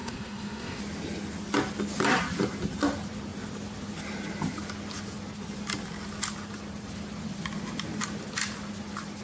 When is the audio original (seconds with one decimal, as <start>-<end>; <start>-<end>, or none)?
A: 0.8-9.2